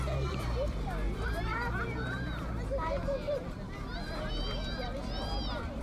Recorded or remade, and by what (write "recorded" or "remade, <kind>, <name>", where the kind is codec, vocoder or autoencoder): remade, vocoder, BigVGAN v2